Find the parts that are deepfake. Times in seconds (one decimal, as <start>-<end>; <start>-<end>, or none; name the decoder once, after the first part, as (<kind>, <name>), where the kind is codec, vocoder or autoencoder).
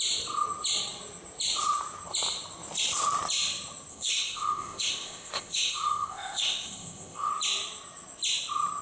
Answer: 3.9-7.3 (codec, ZipCodec)